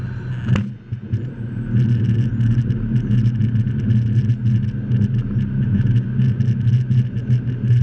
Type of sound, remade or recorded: recorded